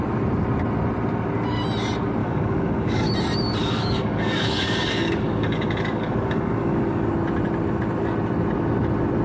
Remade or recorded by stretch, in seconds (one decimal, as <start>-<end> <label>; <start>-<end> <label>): 0.0-2.2 recorded; 2.2-3.1 remade; 3.1-3.6 recorded; 3.6-7.1 remade; 7.1-9.2 recorded